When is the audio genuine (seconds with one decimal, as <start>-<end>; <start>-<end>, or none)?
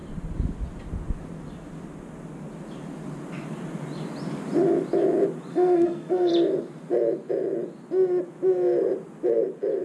0.0-5.5; 6.3-9.8